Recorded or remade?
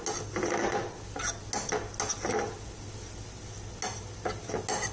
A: recorded